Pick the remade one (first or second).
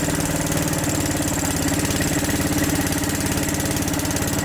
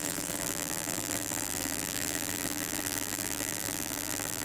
second